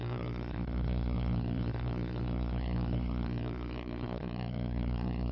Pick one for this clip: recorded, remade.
remade